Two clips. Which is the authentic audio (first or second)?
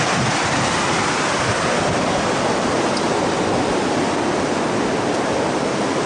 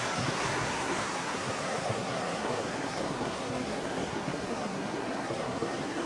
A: first